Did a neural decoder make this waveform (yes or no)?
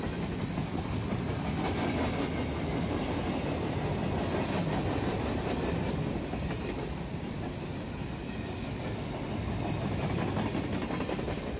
no